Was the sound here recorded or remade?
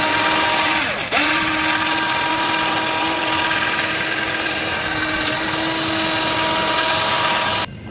recorded